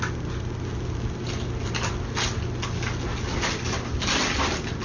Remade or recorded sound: recorded